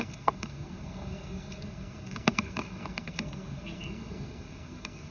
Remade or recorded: remade